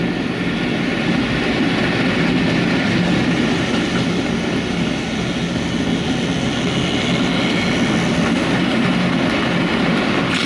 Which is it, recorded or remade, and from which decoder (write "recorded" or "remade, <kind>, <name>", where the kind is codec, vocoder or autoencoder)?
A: recorded